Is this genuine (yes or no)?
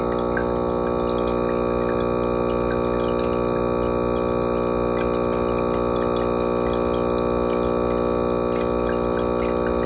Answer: yes